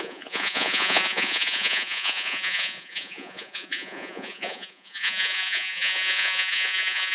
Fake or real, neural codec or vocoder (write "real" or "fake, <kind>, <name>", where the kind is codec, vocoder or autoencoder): fake, vocoder, Vocos